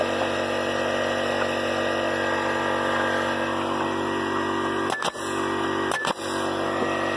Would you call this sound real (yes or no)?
yes